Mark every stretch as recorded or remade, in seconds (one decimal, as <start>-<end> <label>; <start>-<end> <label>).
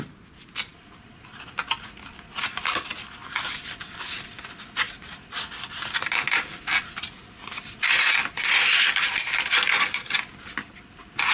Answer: 0.0-11.3 recorded